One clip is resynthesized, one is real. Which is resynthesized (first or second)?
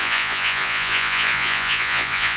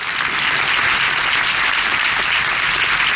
first